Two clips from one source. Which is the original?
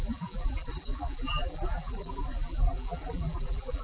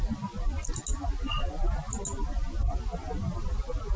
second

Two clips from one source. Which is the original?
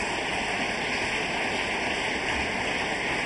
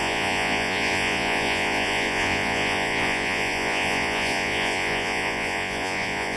first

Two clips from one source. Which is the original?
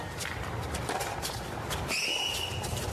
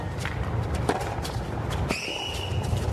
first